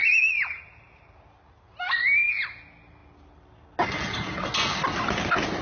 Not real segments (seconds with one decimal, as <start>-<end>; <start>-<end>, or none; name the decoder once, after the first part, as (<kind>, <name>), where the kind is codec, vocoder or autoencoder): none